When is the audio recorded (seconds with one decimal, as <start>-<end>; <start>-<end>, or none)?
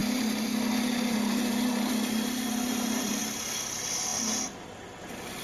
3.2-5.4